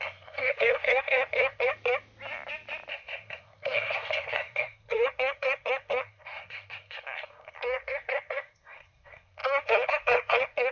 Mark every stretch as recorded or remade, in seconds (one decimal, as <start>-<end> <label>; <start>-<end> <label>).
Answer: 0.0-1.7 remade; 1.7-2.9 recorded; 2.9-10.7 remade